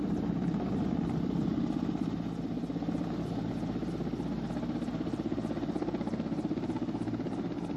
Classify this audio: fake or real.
real